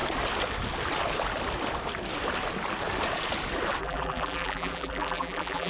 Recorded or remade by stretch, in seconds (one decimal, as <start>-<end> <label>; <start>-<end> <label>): 0.0-3.8 recorded; 3.8-5.7 remade